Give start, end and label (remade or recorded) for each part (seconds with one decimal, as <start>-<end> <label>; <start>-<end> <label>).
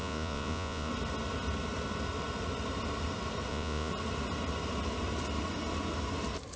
0.0-0.9 remade; 0.9-3.5 recorded; 3.5-3.9 remade; 3.9-6.6 recorded